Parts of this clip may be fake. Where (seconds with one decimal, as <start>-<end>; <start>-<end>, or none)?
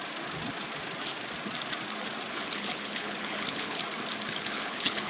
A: 2.3-3.8; 4.4-5.1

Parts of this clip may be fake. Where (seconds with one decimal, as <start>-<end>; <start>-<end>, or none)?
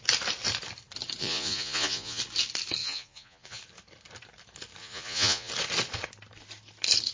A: 1.2-2.2; 2.8-3.6; 4.8-5.5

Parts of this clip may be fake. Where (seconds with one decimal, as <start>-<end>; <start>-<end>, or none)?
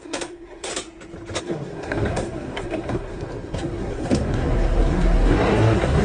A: 0.0-0.7; 1.4-6.0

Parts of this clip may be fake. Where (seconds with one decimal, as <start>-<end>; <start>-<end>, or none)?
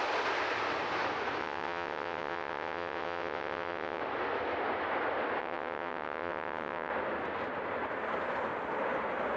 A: 1.4-4.0; 5.4-6.9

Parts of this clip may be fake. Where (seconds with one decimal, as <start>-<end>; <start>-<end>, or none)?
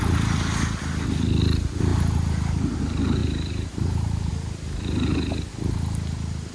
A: 3.2-4.3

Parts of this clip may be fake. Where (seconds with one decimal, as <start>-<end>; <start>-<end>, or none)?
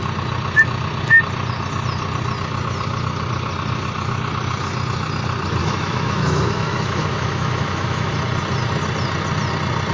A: 5.6-8.1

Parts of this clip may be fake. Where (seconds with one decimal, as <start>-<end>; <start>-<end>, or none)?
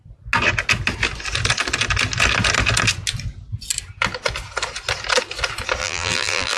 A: 5.8-6.6